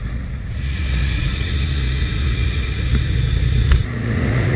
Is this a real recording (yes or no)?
no